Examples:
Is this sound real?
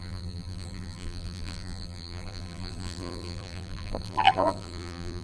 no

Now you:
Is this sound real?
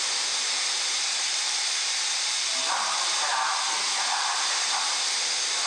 no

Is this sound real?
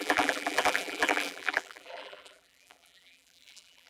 no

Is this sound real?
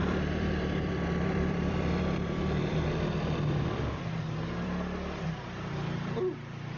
no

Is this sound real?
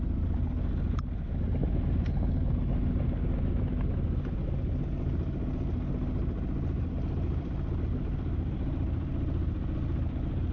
yes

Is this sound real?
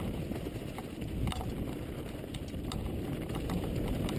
yes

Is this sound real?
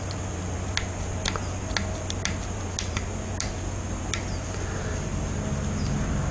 yes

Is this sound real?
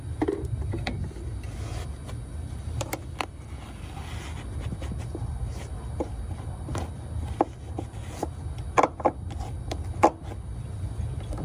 yes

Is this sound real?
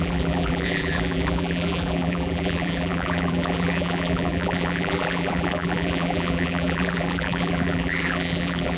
no